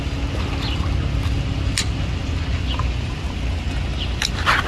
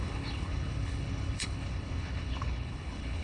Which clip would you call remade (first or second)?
second